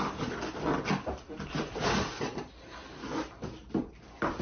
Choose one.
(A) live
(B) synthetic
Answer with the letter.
A